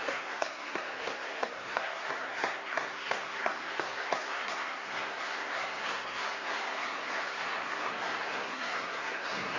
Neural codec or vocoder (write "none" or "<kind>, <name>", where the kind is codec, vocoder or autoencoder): codec, SNAC